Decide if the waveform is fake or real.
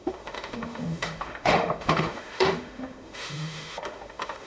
fake